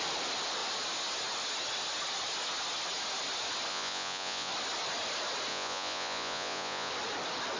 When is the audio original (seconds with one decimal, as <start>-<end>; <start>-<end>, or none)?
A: 0.0-3.7; 4.5-5.5; 6.9-7.6